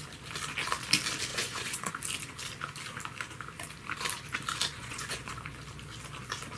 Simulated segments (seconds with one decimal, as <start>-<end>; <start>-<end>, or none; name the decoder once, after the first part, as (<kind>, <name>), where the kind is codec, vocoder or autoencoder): 1.3-1.9 (vocoder, Vocos); 4.7-5.3